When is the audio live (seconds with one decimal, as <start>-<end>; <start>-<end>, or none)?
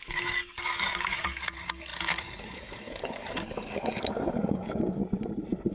5.0-5.7